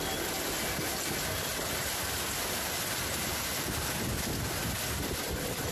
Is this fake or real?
real